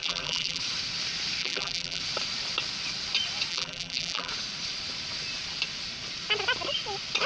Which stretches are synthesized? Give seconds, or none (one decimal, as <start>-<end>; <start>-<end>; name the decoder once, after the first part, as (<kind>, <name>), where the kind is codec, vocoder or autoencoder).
0.0-0.6 (vocoder, BigVGAN v2); 1.4-2.0; 3.5-4.3